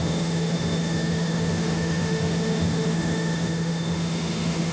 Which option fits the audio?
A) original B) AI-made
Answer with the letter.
B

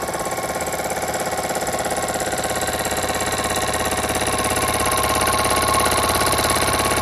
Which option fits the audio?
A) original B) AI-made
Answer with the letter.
A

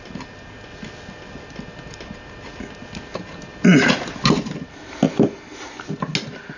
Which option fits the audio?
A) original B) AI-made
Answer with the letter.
A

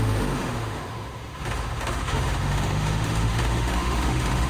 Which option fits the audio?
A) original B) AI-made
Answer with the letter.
B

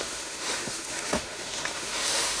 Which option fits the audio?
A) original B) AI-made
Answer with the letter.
B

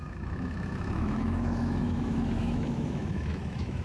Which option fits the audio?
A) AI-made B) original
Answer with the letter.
A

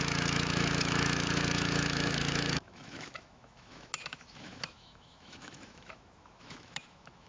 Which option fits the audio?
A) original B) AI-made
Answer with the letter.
B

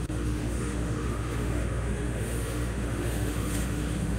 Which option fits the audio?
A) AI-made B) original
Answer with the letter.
A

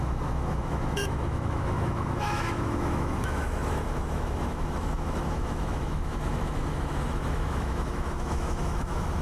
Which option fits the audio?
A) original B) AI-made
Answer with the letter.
B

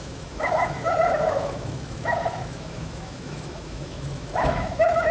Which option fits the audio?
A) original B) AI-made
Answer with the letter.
B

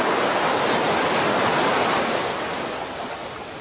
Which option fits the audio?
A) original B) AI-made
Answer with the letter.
A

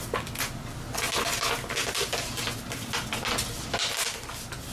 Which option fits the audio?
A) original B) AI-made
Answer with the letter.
A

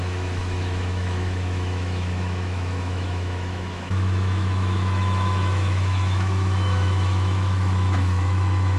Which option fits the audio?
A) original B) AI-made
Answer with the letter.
B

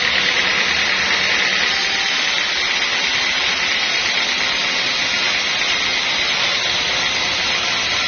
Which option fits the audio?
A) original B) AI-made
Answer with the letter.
A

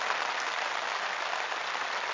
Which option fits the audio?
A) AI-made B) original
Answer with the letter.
B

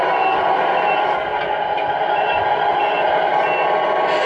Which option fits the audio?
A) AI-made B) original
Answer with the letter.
B